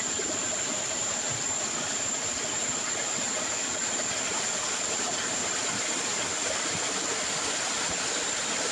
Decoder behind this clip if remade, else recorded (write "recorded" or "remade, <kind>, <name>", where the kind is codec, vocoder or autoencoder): recorded